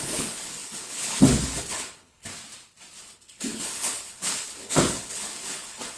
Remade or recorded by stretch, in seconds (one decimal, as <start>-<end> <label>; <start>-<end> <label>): 0.0-2.3 remade; 2.3-3.0 recorded; 3.0-6.0 remade